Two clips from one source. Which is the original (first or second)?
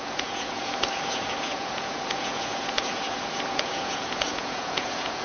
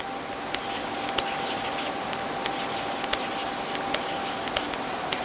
second